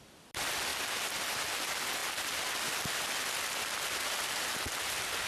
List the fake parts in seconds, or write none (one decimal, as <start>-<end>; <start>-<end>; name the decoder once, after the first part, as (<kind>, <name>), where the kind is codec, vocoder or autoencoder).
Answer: 2.0-5.3 (vocoder, BigVGAN v2)